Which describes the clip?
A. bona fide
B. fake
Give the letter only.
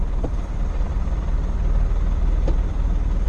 B